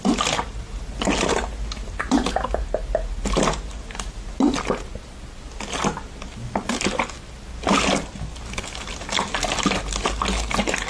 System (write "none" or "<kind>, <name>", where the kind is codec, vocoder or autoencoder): none